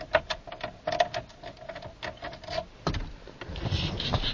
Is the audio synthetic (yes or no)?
no